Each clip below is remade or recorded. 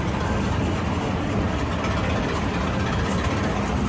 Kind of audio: recorded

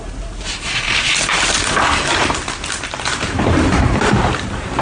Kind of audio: recorded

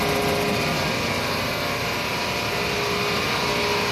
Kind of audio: recorded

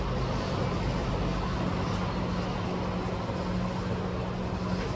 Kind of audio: recorded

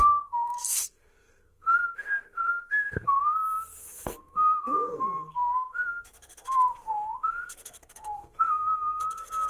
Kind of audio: remade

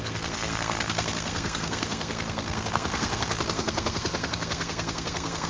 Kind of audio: remade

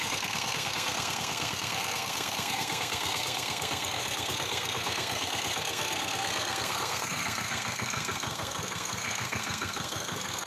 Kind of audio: remade